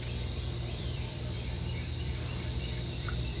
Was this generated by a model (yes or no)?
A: yes